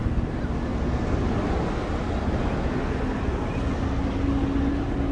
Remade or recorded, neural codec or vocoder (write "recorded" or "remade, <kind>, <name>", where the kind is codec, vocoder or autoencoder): recorded